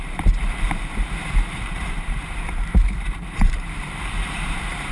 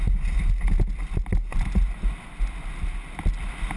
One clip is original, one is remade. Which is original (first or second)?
second